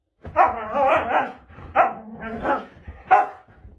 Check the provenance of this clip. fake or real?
real